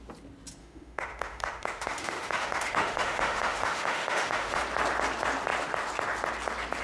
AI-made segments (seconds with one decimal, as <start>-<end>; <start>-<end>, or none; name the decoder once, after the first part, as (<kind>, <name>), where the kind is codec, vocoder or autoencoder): 0.6-4.6 (autoencoder, DAC-VAE)